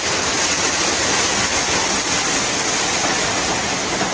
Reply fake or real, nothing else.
real